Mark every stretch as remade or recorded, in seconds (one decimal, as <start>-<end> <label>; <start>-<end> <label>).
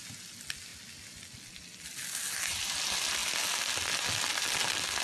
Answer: 0.0-5.0 recorded